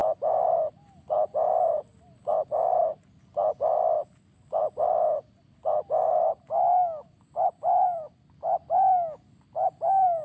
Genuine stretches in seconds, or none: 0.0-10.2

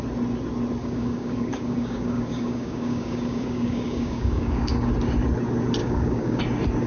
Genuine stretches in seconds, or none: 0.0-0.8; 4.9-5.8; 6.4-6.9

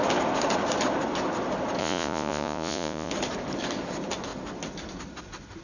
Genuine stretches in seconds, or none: 0.0-1.8; 3.1-5.6